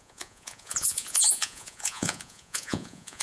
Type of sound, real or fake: fake